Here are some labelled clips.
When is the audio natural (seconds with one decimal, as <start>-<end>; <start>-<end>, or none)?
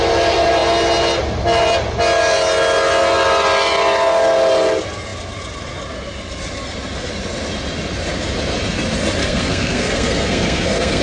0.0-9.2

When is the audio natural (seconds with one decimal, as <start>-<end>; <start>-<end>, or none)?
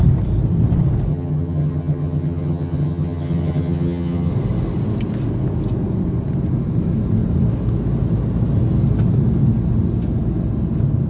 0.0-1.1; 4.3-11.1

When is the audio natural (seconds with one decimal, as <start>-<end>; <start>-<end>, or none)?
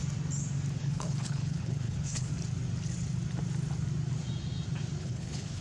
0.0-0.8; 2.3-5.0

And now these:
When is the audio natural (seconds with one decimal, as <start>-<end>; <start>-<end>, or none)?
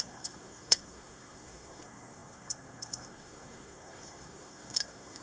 none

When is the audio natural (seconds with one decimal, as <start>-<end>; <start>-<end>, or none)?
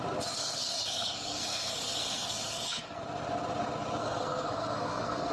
0.0-0.4; 3.0-4.0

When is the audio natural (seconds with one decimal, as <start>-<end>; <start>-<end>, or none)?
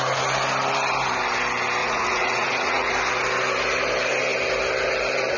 0.0-1.8; 2.9-5.4